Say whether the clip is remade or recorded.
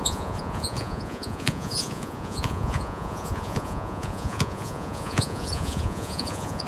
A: remade